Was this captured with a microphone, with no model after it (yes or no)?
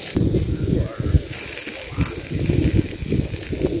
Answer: yes